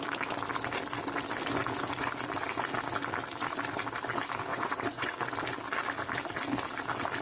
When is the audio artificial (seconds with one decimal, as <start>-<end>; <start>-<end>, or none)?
4.5-5.1